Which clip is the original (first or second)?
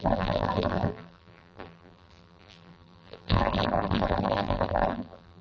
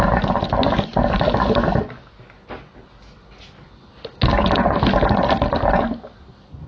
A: second